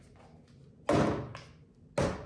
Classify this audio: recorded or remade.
recorded